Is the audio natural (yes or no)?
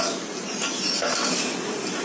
yes